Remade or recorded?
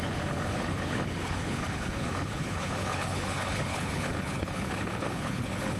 remade